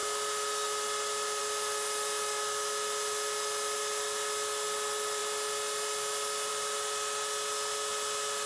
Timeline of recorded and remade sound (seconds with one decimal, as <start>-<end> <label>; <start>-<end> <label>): 0.0-8.5 recorded